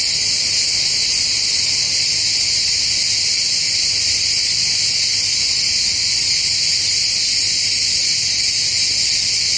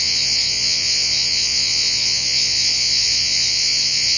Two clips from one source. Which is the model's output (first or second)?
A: second